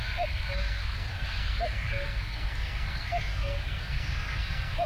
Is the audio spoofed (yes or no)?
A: yes